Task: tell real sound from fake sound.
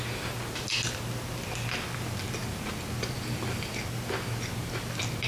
real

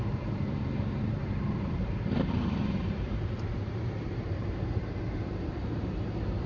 fake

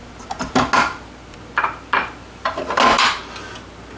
real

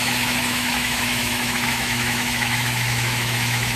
fake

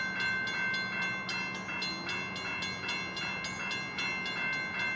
real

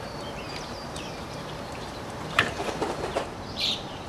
fake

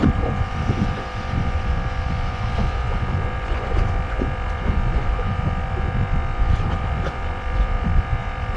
fake